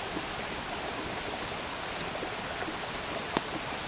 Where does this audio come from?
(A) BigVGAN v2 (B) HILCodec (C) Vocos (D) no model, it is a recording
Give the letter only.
A